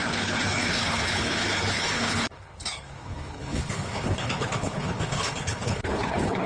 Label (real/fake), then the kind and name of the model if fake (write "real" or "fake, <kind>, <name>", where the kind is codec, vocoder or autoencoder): fake, codec, HILCodec